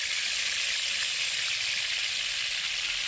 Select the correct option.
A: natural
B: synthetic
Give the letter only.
A